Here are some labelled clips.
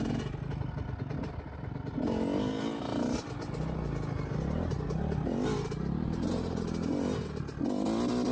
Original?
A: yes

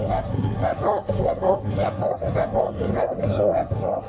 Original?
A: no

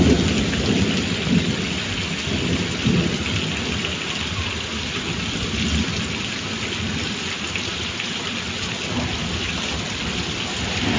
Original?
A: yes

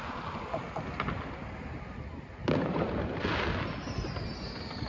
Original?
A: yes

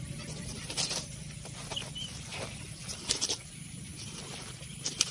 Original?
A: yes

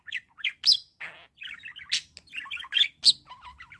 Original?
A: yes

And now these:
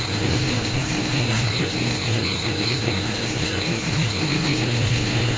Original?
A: no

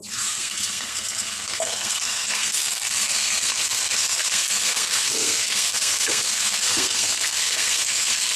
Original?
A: no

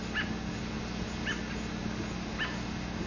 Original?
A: yes